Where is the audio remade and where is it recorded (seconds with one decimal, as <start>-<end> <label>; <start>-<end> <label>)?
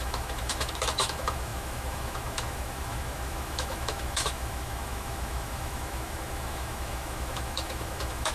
0.0-8.3 remade